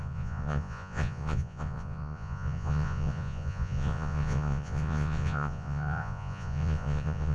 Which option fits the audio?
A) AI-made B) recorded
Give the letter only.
A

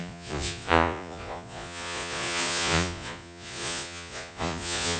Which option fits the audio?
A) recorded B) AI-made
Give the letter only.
B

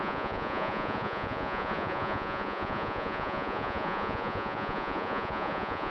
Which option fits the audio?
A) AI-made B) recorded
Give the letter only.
A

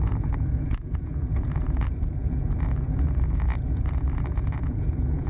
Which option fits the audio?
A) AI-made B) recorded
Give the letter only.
A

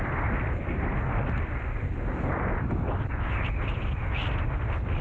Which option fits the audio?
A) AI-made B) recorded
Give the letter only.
B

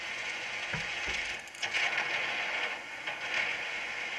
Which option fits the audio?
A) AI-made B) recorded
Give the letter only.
A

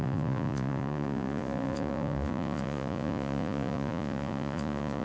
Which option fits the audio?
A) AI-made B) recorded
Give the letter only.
A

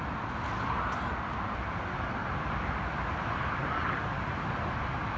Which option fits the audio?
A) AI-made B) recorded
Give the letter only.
B